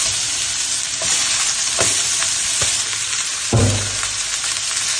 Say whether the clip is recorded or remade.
recorded